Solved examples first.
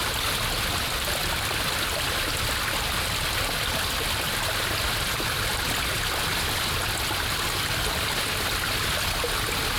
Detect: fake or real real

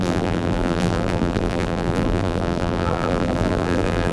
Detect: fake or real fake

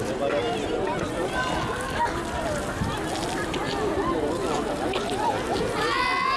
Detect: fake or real real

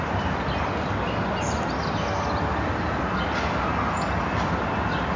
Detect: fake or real real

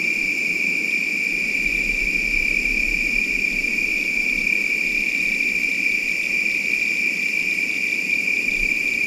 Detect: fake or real real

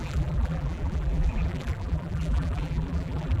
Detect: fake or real fake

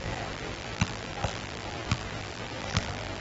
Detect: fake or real fake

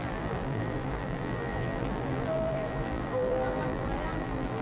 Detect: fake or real fake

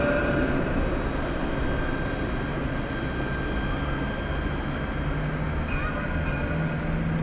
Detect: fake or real real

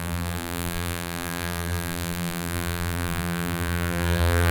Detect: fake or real fake